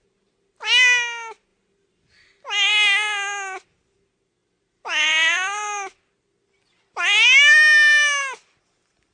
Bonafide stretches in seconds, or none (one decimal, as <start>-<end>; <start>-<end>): 0.0-4.4; 6.0-9.1